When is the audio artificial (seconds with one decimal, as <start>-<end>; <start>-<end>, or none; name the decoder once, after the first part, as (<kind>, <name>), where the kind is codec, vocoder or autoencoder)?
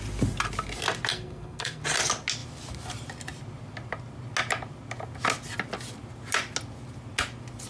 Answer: 1.1-1.8 (codec, SNAC)